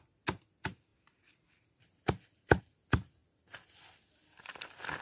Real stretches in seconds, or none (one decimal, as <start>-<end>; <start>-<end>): 0.0-5.0